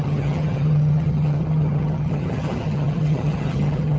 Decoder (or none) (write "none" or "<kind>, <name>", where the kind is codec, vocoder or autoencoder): vocoder, HiFi-GAN